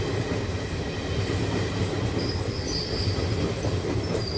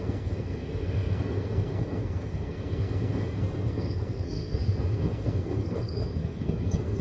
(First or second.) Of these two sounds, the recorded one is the first